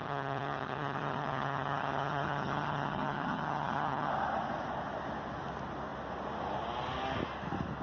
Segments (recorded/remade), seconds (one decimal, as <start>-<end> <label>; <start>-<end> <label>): 0.0-4.1 remade; 4.1-7.8 recorded